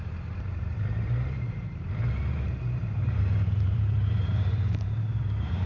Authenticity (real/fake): fake